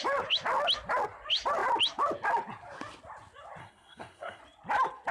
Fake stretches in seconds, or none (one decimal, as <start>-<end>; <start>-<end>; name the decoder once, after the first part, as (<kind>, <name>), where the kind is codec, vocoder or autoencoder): 3.6-4.4 (codec, SNAC)